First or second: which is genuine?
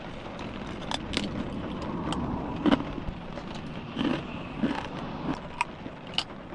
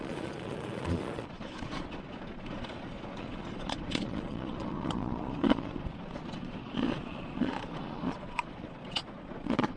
first